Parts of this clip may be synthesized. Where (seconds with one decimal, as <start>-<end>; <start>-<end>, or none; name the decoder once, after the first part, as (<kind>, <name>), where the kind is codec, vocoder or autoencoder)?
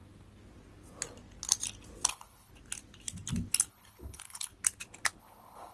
2.1-2.5 (codec, HILCodec); 3.7-4.5; 5.2-5.7